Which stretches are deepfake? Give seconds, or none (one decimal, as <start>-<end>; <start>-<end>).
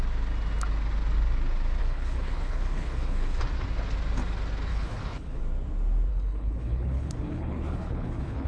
1.8-3.4; 4.7-5.4; 6.1-8.5